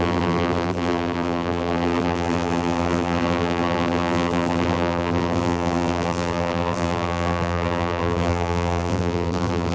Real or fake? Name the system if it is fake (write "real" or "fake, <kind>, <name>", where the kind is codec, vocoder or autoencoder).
fake, vocoder, BigVGAN v2